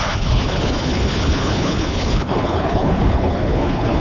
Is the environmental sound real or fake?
fake